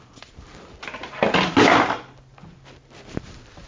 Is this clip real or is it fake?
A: real